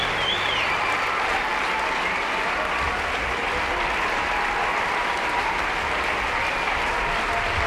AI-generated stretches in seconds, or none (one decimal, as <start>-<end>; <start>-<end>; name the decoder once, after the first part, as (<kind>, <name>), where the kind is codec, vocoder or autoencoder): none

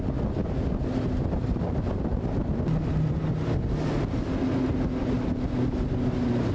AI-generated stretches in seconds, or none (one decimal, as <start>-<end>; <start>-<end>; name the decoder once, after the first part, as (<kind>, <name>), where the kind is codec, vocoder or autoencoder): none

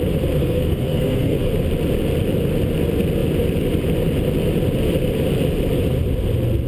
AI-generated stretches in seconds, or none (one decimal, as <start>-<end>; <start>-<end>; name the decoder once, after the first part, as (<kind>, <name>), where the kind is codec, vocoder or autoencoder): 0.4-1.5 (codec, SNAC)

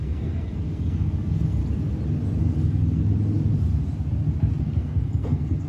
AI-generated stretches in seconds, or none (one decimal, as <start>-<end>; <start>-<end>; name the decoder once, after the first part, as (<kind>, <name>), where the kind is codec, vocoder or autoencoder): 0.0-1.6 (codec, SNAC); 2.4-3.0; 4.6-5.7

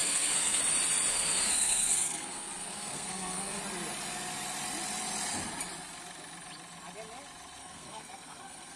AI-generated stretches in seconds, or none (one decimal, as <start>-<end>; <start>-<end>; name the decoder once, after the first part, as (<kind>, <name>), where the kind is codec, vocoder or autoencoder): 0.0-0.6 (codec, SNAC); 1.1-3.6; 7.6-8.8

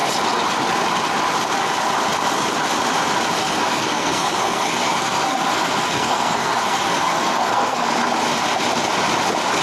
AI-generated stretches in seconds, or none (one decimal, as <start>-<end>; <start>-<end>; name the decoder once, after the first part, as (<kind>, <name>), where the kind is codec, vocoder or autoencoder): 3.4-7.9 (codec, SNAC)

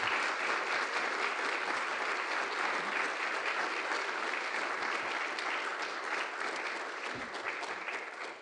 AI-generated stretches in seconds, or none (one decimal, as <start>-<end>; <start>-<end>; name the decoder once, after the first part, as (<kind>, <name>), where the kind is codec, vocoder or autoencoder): none